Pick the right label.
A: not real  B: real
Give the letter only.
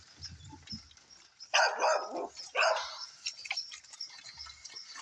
B